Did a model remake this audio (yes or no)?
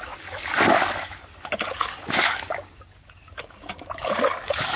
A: yes